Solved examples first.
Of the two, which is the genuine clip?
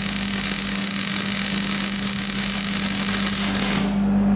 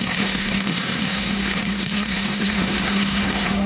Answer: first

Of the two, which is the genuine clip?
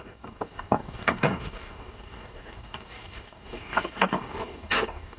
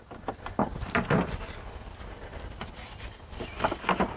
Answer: second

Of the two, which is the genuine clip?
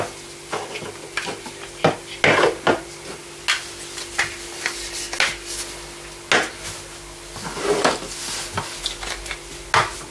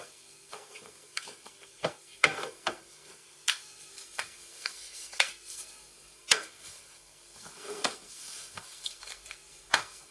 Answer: first